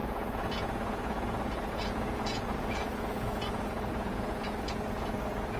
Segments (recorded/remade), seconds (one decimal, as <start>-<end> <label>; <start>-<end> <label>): 0.0-5.6 remade